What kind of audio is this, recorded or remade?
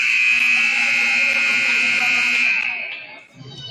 remade